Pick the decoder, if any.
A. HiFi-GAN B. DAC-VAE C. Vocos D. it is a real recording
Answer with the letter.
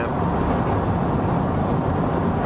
D